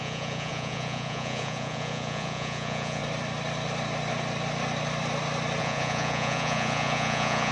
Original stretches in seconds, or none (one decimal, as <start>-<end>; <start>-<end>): 3.0-5.6